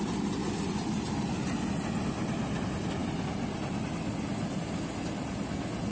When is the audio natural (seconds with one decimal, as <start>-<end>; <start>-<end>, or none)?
0.0-5.9